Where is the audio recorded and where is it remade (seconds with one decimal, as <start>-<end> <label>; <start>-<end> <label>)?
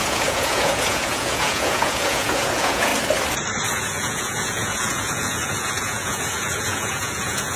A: 0.0-2.9 remade; 2.9-3.7 recorded; 3.7-7.6 remade